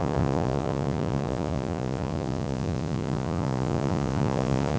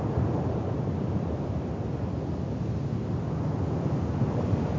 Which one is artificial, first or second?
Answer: first